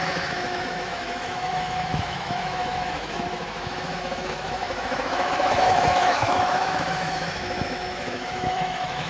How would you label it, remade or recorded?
remade